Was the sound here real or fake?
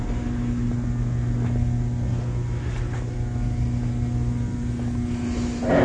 real